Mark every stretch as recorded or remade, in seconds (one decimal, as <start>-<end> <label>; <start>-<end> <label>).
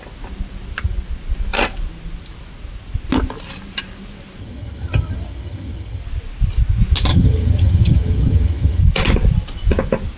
0.0-4.4 recorded; 4.4-6.0 remade; 6.0-7.1 recorded; 7.1-8.8 remade; 8.8-10.2 recorded